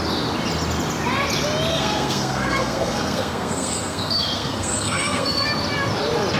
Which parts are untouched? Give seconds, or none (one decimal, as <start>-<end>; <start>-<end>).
0.0-1.7; 5.5-6.4

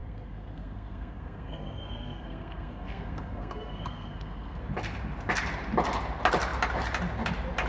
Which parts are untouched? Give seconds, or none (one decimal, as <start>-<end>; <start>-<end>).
4.6-7.7

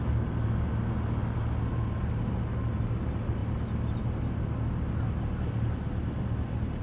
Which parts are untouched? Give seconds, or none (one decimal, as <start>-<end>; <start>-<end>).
0.0-6.8

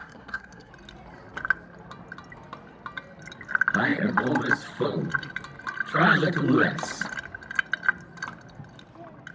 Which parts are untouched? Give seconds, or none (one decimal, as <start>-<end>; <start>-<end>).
0.7-9.3

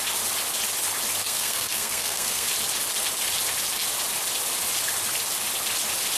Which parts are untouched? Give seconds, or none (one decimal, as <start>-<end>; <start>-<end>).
0.0-1.2; 2.5-6.2